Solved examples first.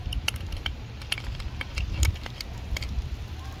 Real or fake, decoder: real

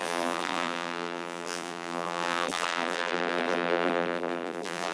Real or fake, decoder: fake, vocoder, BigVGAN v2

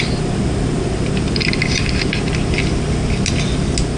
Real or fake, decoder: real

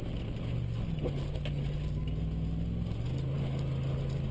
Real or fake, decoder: real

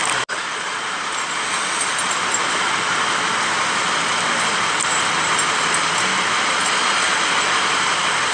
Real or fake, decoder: real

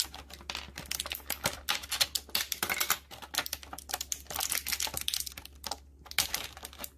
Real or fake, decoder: real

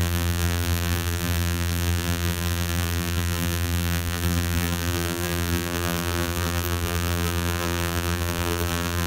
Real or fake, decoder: fake, vocoder, BigVGAN v2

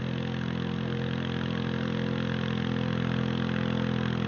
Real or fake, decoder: real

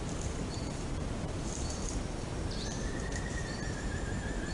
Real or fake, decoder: fake, vocoder, BigVGAN v2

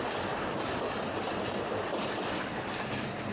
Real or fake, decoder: fake, vocoder, BigVGAN v2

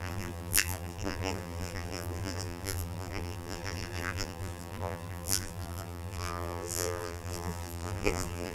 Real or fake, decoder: fake, vocoder, BigVGAN v2